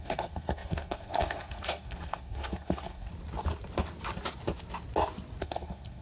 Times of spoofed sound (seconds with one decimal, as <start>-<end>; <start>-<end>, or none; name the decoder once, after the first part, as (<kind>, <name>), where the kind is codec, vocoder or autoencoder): 0.0-3.1 (codec, SNAC); 5.4-6.0